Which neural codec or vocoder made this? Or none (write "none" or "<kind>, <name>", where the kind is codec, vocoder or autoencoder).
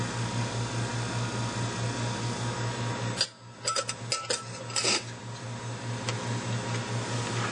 none